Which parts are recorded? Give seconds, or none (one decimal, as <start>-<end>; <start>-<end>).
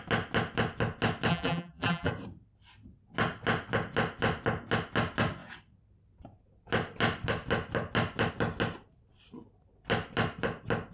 0.0-1.3; 2.1-10.9